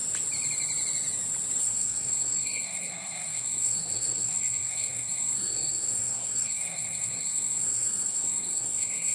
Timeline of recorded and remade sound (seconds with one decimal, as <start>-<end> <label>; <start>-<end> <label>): 0.0-1.6 recorded; 1.6-9.1 remade